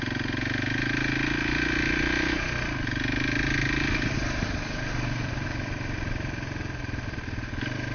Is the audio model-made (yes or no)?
no